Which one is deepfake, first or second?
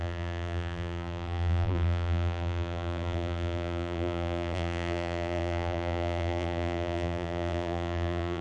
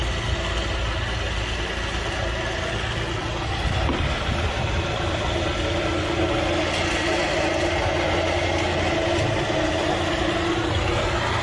first